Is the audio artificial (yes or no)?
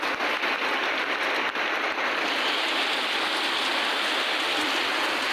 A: no